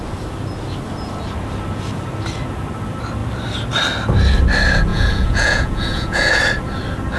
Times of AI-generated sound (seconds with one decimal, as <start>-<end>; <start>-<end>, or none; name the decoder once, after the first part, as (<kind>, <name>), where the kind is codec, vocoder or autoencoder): 4.9-6.3 (vocoder, Vocos)